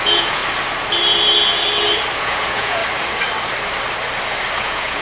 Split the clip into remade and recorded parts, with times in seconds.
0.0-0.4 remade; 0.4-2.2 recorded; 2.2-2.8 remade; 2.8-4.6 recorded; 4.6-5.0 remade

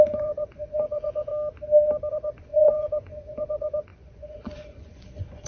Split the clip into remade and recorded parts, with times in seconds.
0.0-1.3 remade; 1.3-2.1 recorded; 2.1-5.5 remade

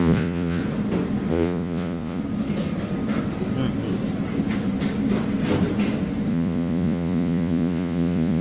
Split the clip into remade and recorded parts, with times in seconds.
0.0-0.6 remade; 0.6-1.3 recorded; 1.3-2.2 remade; 2.2-6.3 recorded; 6.3-8.4 remade

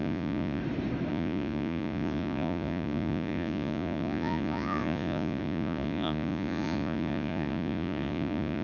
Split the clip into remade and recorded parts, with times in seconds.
0.0-0.6 remade; 0.6-1.1 recorded; 1.1-8.6 remade